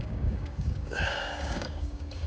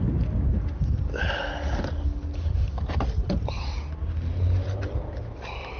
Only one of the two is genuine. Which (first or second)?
second